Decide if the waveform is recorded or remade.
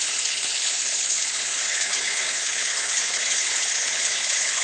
remade